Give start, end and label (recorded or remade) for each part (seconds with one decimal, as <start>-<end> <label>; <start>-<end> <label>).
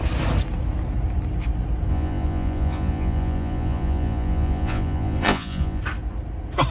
0.0-1.9 recorded; 1.9-5.8 remade; 5.8-6.7 recorded